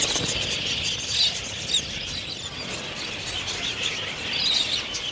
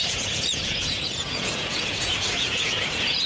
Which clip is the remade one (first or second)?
second